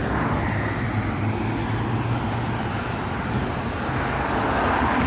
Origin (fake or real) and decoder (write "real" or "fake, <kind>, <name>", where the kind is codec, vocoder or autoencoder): real